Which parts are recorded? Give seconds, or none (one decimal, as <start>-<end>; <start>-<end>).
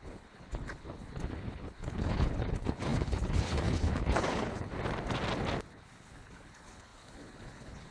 4.7-5.7